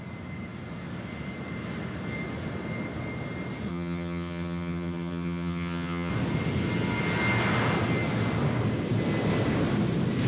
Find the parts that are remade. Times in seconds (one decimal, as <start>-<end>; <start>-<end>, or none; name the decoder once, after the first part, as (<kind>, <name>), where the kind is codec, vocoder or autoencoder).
3.7-6.1 (vocoder, HiFi-GAN)